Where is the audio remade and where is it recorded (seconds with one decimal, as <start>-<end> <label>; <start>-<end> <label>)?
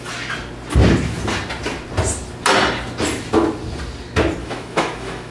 0.0-4.4 recorded; 4.4-5.3 remade